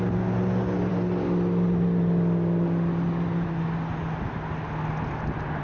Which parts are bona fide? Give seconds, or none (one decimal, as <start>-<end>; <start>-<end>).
0.0-5.6